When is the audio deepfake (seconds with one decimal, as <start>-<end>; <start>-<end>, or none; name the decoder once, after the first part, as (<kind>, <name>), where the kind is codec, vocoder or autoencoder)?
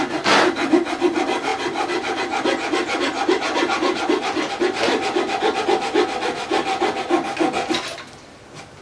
none